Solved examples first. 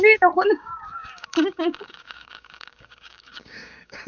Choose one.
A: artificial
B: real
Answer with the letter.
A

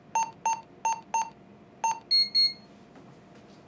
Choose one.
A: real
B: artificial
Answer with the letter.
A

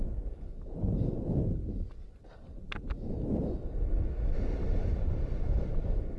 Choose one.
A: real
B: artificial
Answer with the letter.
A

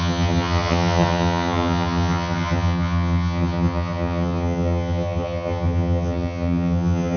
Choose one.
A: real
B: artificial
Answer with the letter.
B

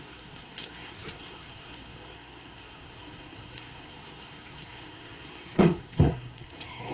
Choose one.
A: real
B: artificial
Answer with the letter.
B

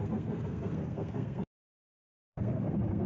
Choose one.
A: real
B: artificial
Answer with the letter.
B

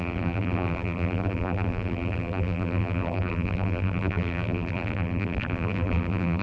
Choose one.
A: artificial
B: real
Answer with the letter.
A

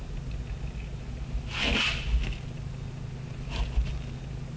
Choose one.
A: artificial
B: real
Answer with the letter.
B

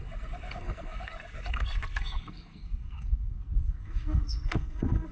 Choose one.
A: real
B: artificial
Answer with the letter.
B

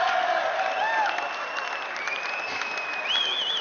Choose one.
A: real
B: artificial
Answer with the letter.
A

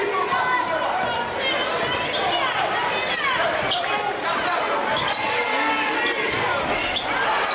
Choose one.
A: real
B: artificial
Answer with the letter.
A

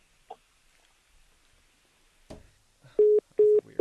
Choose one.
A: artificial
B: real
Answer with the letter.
B